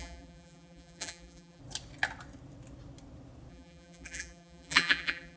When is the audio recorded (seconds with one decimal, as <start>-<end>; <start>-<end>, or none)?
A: 1.6-3.5